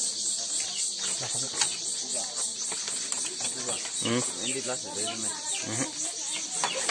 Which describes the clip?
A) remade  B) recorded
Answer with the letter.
B